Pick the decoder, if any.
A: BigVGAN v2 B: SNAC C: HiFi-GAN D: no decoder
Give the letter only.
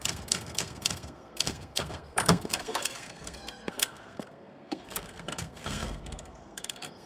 B